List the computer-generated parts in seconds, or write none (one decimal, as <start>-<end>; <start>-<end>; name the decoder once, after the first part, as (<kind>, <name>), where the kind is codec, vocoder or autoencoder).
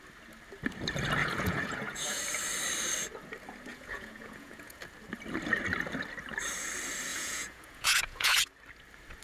1.2-2.2 (vocoder, Vocos); 3.7-4.8; 7.1-8.5